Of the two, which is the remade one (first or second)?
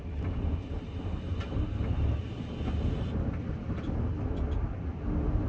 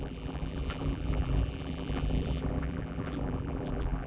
second